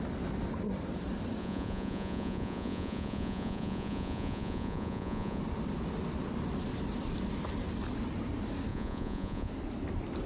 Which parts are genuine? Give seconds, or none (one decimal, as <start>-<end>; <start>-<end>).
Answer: 0.0-1.4; 5.4-8.7; 9.5-10.3